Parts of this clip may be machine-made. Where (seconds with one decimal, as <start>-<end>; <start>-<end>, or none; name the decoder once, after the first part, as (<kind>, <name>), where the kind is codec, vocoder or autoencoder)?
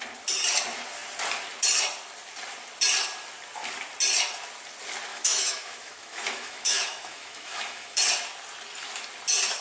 5.1-8.0 (autoencoder, DAC-VAE)